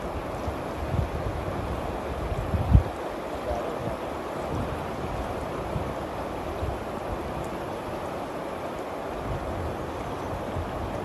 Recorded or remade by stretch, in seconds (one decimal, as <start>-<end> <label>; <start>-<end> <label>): 0.0-11.0 recorded